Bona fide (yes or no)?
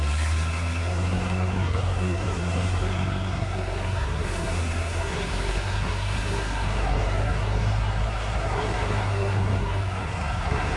no